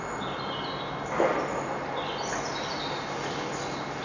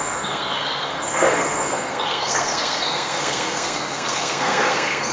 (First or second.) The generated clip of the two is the second